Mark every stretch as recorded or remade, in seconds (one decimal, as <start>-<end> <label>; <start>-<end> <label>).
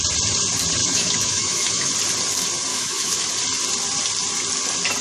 0.0-0.8 recorded; 0.8-1.9 remade; 1.9-2.7 recorded; 2.7-3.3 remade; 3.3-5.0 recorded